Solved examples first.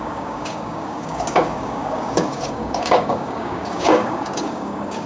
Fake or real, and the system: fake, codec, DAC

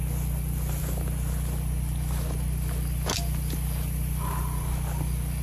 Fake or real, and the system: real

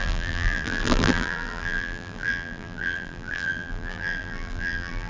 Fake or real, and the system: fake, vocoder, BigVGAN v2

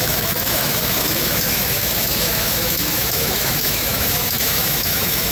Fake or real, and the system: fake, autoencoder, DAC-VAE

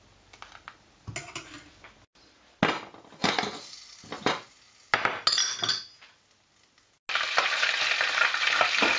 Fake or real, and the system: real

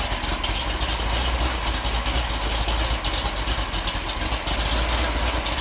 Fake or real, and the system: real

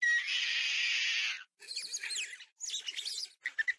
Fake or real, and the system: real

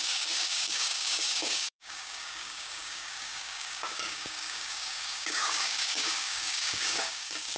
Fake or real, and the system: fake, codec, DAC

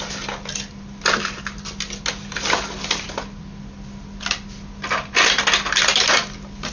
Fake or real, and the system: real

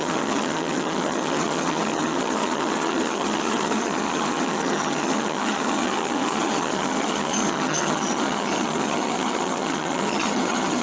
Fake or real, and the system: fake, vocoder, HiFi-GAN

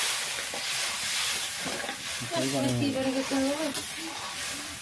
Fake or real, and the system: real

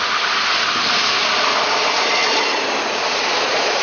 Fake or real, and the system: real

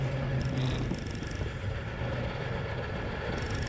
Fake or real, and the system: real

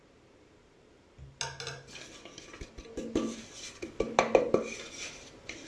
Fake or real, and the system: real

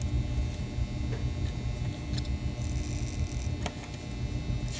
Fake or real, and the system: real